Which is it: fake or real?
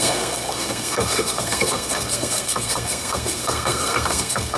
fake